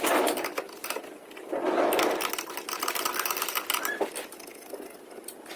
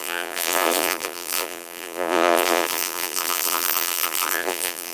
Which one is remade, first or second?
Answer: second